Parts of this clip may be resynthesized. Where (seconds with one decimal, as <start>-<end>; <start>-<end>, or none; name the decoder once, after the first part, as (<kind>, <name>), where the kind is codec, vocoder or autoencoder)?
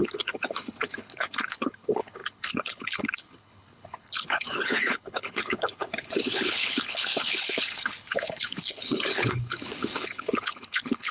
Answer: 0.0-11.1 (codec, HILCodec)